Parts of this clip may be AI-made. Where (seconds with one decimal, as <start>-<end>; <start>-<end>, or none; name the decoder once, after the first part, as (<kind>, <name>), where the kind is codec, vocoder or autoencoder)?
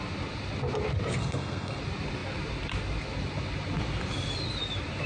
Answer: 1.2-1.8 (codec, SNAC)